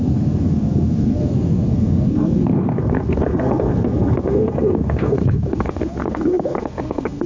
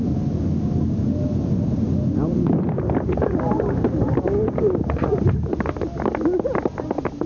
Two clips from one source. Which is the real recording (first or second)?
second